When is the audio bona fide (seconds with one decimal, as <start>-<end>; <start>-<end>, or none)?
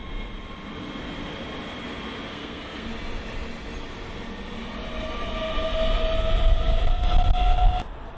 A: 0.0-2.3; 2.9-8.2